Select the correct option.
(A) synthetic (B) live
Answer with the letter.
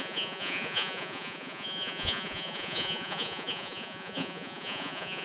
A